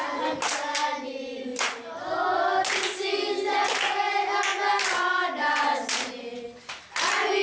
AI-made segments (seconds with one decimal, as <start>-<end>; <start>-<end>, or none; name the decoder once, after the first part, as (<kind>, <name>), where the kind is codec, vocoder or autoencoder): none